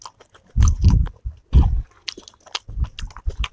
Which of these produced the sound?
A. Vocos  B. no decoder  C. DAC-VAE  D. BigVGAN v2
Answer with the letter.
B